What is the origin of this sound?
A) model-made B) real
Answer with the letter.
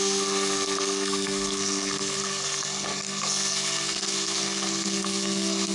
A